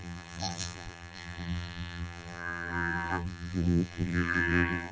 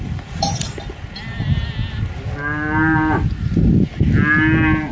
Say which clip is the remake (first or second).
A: first